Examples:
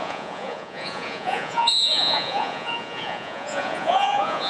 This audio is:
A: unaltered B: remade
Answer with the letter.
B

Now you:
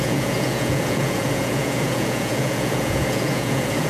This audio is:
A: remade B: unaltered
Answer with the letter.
A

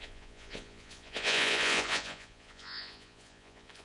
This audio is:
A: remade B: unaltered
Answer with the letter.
A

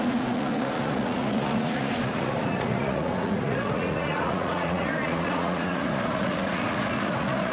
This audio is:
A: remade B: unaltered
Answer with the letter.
A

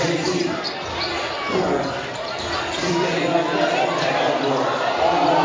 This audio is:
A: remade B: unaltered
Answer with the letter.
B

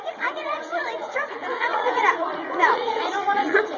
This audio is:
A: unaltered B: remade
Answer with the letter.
B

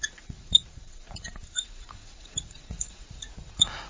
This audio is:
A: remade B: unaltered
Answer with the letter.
A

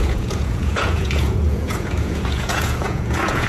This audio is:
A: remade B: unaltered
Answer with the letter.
A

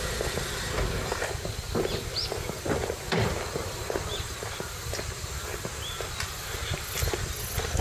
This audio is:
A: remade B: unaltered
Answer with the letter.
B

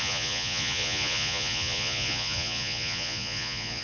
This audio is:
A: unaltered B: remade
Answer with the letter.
B